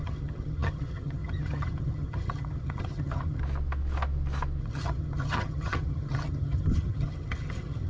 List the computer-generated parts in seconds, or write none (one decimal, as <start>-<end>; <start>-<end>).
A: 0.0-3.4; 4.6-7.9